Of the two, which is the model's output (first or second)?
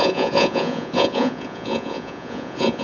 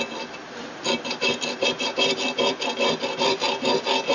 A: first